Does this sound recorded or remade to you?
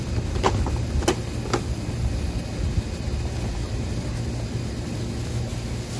recorded